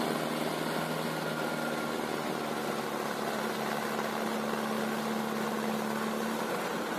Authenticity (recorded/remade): recorded